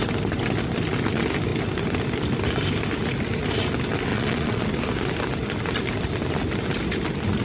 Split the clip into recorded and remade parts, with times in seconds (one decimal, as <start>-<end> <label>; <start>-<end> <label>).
0.0-4.1 recorded; 4.1-4.6 remade; 4.6-7.4 recorded